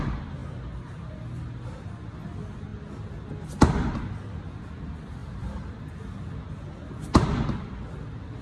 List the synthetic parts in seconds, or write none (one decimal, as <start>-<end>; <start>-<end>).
5.2-5.7